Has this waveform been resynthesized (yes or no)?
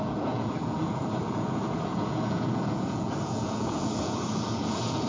yes